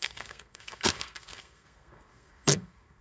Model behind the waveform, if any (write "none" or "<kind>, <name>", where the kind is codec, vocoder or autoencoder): codec, SNAC